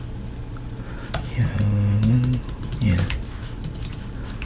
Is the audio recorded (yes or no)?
yes